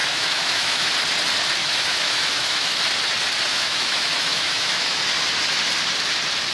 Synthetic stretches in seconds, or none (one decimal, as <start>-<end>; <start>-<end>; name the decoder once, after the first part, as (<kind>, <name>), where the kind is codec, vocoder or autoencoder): 0.0-0.9 (autoencoder, DAC-VAE); 1.6-2.8; 3.5-5.0